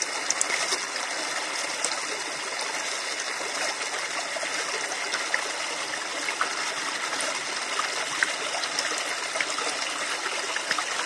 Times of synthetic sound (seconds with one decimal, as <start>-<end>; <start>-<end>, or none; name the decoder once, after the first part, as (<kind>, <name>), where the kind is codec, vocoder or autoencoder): none